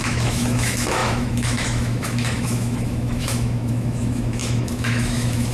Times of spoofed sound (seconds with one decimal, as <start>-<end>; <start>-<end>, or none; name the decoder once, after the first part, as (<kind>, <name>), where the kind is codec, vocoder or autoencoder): 0.0-5.5 (autoencoder, DAC-VAE)

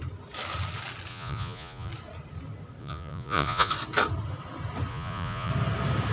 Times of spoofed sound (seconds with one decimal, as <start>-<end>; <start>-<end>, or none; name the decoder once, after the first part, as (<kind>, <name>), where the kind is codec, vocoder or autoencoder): 1.1-1.9 (vocoder, Vocos); 2.8-3.7; 4.9-5.5

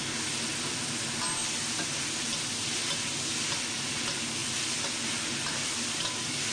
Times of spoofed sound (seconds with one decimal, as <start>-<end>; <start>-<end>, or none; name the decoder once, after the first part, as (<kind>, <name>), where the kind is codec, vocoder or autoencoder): none

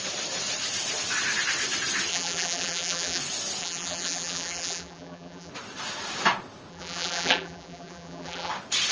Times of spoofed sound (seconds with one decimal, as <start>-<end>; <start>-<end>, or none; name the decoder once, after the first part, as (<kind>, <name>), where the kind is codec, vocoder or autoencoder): 2.1-3.2 (vocoder, BigVGAN v2); 3.6-5.5; 6.7-8.5

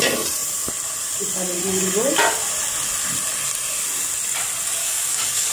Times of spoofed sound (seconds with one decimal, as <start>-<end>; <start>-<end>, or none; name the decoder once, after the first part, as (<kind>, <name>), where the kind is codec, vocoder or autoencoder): 4.8-5.5 (codec, DAC)

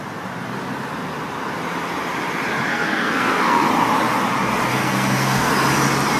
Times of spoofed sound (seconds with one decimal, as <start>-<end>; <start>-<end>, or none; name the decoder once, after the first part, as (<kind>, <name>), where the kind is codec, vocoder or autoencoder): 2.7-3.7 (codec, SNAC); 4.7-5.5

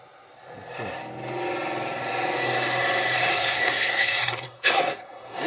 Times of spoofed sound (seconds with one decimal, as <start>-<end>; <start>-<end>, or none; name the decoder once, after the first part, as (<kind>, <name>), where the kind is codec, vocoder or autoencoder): 3.3-5.5 (codec, SNAC)

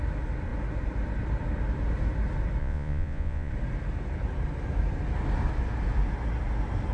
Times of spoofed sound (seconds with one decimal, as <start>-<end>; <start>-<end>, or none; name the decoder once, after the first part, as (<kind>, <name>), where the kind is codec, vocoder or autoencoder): 2.6-3.5 (vocoder, Vocos)